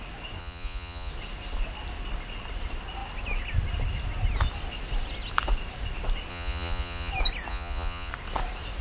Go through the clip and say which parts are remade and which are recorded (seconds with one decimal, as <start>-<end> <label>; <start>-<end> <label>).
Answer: 0.0-0.4 recorded; 0.4-1.1 remade; 1.1-6.3 recorded; 6.3-7.1 remade; 7.1-7.5 recorded; 7.5-8.1 remade; 8.1-8.8 recorded